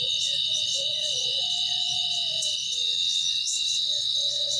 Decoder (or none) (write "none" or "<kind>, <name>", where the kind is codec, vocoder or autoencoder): vocoder, WaveNeXt